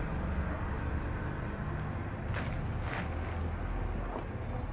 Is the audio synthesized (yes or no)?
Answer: no